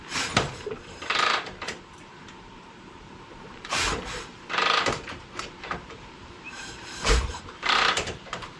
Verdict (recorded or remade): remade